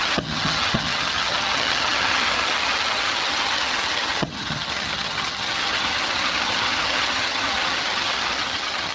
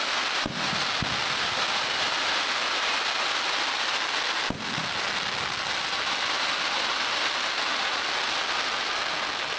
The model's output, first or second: first